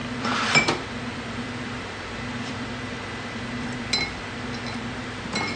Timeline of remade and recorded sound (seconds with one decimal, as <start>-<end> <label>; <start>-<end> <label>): 0.0-3.4 remade; 3.4-5.6 recorded